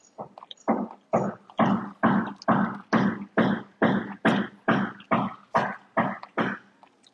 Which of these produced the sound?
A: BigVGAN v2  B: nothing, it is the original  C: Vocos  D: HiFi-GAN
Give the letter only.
B